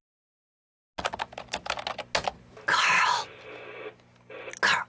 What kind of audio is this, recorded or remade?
recorded